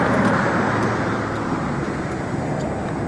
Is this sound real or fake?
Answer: real